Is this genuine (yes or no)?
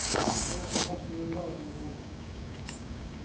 no